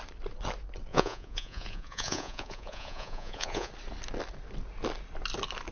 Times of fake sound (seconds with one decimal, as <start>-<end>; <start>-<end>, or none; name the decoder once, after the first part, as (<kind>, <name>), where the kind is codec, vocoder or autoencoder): 0.9-3.7 (vocoder, Vocos)